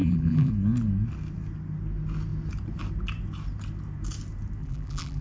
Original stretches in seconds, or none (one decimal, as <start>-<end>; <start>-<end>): 0.5-4.6